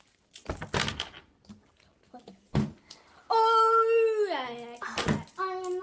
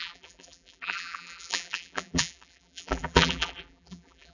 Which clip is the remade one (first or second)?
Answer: second